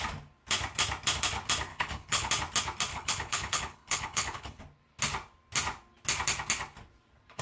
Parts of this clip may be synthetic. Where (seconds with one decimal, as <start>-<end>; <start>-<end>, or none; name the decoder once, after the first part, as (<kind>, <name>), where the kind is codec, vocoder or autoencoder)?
1.7-2.3 (codec, HILCodec); 2.9-4.6